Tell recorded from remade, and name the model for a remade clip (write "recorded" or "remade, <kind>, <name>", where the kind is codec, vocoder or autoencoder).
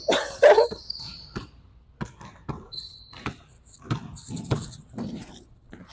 recorded